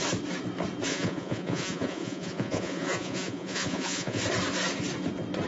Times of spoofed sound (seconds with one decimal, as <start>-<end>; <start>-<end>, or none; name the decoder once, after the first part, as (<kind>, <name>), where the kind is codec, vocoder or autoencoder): 0.9-4.2 (vocoder, Vocos)